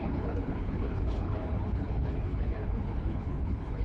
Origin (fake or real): fake